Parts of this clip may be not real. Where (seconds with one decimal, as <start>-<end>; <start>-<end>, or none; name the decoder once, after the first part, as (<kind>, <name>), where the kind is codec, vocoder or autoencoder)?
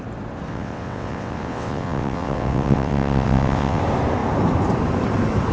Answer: 0.5-3.8 (vocoder, WaveNeXt)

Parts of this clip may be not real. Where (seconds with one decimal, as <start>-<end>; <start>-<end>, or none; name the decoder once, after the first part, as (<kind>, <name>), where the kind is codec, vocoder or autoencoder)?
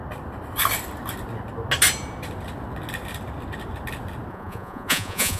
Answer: 4.3-5.4 (vocoder, Vocos)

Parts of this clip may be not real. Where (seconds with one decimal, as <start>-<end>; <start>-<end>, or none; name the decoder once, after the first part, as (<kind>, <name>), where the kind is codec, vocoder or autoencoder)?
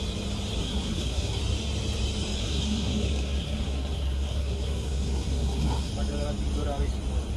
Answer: 0.6-1.4 (codec, SNAC); 2.4-5.9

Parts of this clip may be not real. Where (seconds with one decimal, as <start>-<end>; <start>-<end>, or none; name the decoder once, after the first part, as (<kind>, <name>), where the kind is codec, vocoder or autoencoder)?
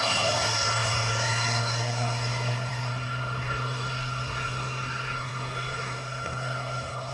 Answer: 0.0-7.1 (codec, SNAC)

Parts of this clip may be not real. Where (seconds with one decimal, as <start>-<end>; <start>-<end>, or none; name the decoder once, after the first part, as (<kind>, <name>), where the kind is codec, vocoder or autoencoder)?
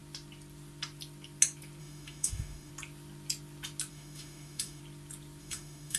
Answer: 1.8-2.7 (autoencoder, DAC-VAE); 3.9-4.8; 5.4-6.0